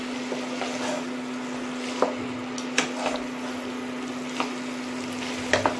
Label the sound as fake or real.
real